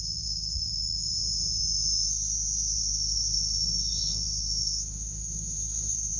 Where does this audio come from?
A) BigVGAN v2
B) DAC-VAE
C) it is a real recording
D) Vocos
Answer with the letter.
B